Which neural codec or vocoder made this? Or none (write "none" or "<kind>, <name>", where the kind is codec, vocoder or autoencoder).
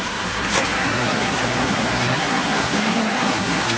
codec, SNAC